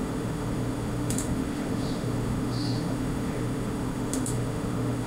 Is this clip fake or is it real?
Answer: fake